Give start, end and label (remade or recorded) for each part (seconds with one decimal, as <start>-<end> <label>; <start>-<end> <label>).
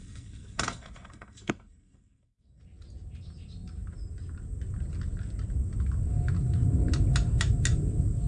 0.0-2.6 remade; 2.6-8.3 recorded